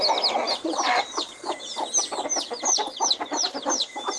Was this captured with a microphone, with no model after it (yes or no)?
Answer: yes